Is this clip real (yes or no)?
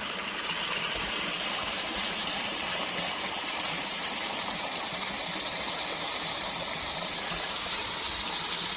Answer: no